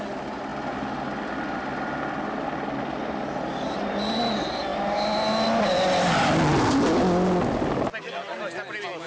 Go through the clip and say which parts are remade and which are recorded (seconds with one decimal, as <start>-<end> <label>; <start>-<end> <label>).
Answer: 0.0-9.1 recorded